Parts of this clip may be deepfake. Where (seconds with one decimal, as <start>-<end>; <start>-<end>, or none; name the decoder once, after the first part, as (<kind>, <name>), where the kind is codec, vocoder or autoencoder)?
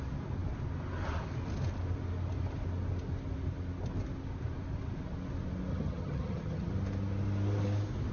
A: 5.7-6.7 (vocoder, HiFi-GAN)